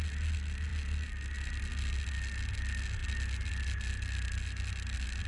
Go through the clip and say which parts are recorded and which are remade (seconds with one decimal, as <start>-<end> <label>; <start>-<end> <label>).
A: 0.0-5.3 recorded